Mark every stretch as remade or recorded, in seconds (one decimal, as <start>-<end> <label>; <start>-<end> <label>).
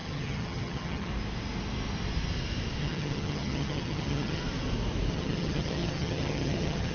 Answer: 0.0-1.1 remade; 1.1-2.8 recorded; 2.8-4.4 remade; 4.4-5.1 recorded; 5.1-6.9 remade